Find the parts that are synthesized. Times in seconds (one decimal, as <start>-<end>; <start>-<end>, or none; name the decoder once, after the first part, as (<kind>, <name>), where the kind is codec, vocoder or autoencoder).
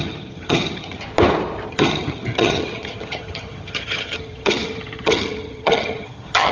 0.0-1.0 (vocoder, HiFi-GAN); 1.7-6.5